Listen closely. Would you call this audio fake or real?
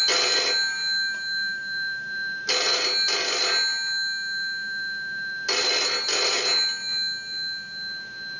real